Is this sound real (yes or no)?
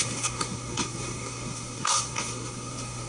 no